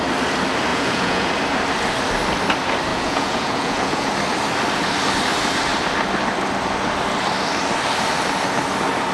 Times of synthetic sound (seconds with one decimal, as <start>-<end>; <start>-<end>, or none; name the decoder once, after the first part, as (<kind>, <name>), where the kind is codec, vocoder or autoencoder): 0.7-1.3 (vocoder, Vocos); 2.9-4.1